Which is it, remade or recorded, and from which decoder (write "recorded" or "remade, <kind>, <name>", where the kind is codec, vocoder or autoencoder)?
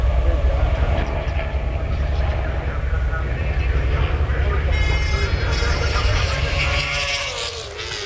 recorded